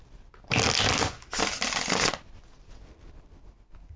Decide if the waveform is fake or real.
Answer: real